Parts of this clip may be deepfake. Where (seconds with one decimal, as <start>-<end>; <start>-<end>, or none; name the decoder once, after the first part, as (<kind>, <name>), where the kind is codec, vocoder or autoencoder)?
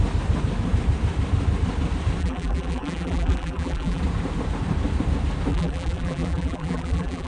2.2-4.0 (vocoder, BigVGAN v2); 5.5-7.3